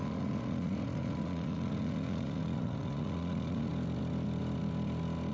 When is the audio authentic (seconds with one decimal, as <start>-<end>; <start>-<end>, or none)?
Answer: 3.7-5.3